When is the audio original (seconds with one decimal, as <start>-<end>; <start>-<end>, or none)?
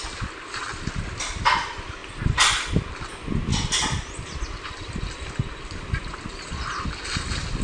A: 0.0-2.0; 2.9-3.5; 5.3-7.6